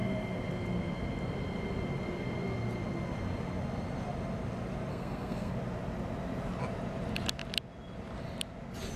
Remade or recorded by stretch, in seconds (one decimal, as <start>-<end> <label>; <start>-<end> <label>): 0.0-4.9 recorded; 4.9-5.5 remade; 5.5-9.0 recorded